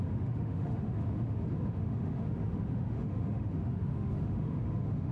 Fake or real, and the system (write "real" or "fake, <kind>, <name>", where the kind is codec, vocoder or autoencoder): fake, autoencoder, DAC-VAE